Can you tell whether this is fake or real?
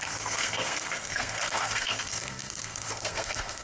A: fake